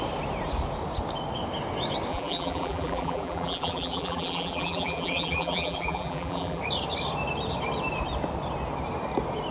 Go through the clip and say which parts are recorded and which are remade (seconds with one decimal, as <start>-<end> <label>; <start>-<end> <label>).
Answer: 0.0-2.1 recorded; 2.1-6.6 remade; 6.6-9.5 recorded